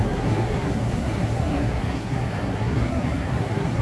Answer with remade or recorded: remade